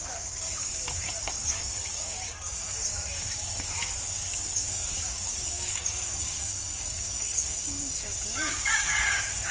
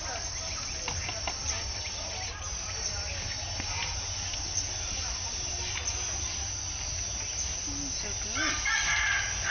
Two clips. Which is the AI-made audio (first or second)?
first